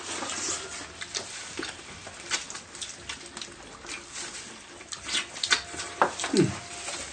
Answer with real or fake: real